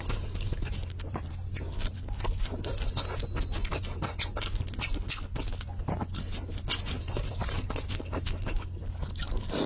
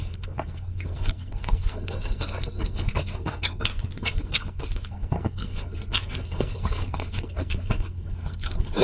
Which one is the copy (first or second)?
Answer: second